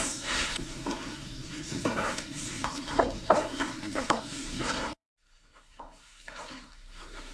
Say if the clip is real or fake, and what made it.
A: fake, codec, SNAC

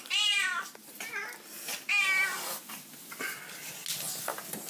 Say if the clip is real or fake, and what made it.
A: real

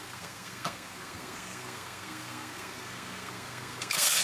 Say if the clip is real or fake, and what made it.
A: fake, codec, SNAC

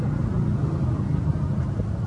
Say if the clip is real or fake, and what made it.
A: real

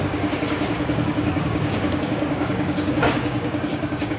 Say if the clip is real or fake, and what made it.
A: fake, codec, DAC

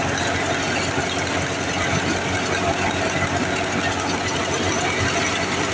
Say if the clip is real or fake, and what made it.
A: real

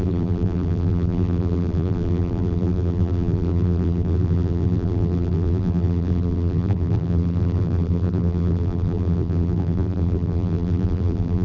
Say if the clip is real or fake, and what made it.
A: fake, vocoder, BigVGAN v2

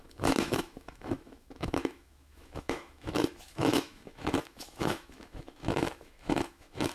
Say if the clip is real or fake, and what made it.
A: fake, autoencoder, DAC-VAE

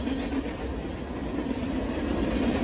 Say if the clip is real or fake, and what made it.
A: real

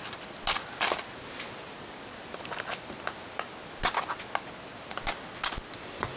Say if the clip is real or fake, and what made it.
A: real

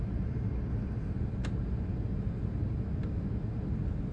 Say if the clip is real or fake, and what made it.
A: real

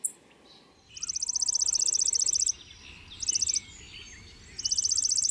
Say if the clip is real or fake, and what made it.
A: real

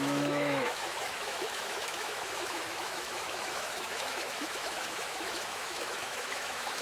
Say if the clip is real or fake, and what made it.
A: fake, autoencoder, DAC-VAE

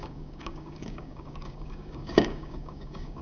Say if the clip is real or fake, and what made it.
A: fake, codec, DAC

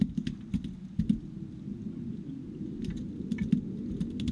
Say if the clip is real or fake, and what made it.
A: real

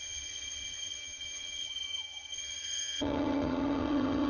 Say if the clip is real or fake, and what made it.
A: fake, vocoder, HiFi-GAN